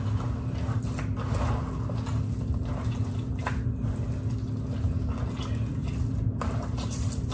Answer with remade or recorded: recorded